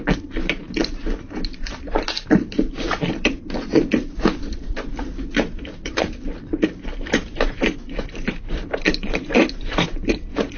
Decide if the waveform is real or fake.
fake